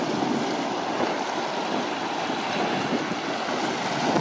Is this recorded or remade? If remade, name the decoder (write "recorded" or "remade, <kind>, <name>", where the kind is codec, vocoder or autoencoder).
recorded